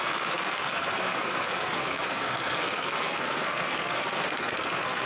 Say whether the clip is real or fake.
fake